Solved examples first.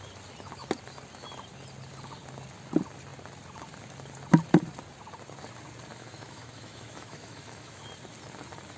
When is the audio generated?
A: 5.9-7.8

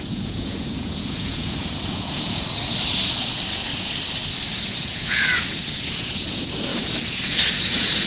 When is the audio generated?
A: 0.0-2.5; 3.0-3.7; 4.5-8.1

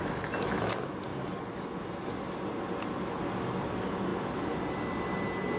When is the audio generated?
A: none

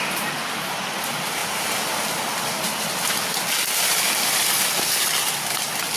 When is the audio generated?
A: none

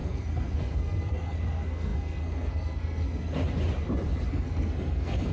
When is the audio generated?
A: 0.0-3.4; 4.3-5.3

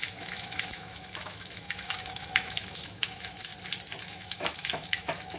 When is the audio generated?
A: 0.0-3.5; 4.0-5.4

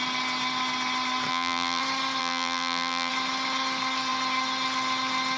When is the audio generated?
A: 1.3-1.8; 2.2-3.1

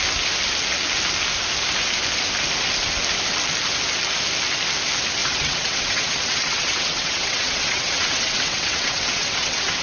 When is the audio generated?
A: 5.2-9.8